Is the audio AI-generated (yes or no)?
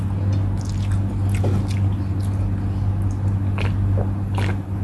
no